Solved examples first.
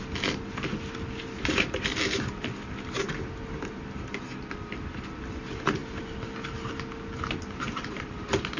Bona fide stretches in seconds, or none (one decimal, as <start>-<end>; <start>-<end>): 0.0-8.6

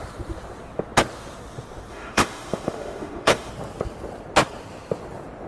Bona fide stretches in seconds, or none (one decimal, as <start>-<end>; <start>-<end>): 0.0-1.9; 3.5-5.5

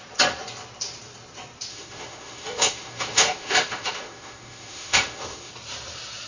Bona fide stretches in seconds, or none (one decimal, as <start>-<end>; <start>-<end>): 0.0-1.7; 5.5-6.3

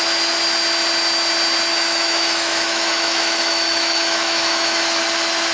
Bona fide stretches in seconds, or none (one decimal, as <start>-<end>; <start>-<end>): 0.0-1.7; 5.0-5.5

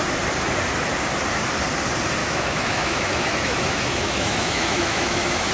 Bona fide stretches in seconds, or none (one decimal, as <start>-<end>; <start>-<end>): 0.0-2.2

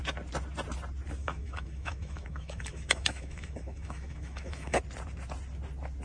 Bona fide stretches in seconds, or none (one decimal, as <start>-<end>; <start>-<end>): 0.0-1.2; 4.8-6.0

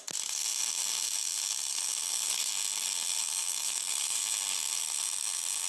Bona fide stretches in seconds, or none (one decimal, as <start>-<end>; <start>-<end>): 0.0-3.4; 4.2-5.7